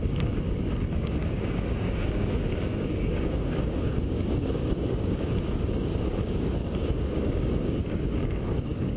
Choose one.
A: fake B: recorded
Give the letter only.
A